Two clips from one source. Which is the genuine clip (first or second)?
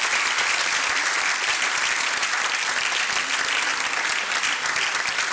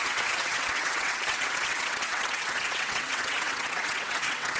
first